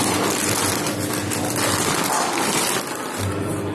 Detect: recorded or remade recorded